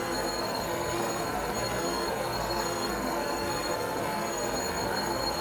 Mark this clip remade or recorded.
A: remade